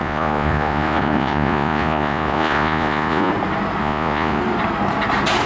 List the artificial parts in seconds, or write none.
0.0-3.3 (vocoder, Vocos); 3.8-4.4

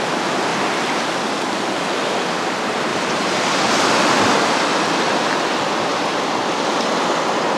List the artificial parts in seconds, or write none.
2.9-3.7 (vocoder, BigVGAN v2)

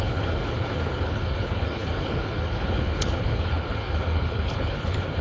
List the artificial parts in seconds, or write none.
0.0-5.2 (codec, HILCodec)

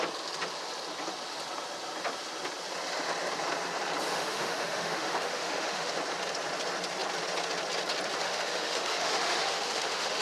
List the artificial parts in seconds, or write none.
4.1-5.9 (autoencoder, DAC-VAE); 8.2-10.2

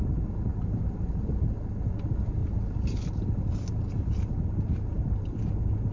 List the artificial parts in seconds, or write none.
0.5-1.1 (vocoder, BigVGAN v2); 2.4-5.9

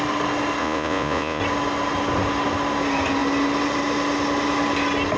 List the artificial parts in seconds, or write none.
0.6-1.4 (vocoder, Vocos)